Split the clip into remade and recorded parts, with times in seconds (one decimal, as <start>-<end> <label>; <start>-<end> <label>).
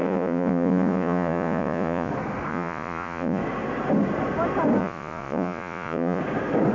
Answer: 0.0-2.1 remade; 2.1-2.5 recorded; 2.5-3.4 remade; 3.4-4.8 recorded; 4.8-6.2 remade; 6.2-6.7 recorded